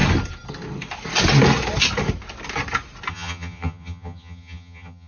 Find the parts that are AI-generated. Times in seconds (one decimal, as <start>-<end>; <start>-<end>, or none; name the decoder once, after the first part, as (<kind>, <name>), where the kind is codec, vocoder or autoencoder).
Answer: 3.1-5.1 (vocoder, HiFi-GAN)